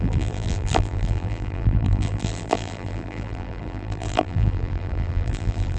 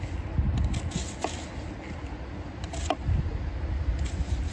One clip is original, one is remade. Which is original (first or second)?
second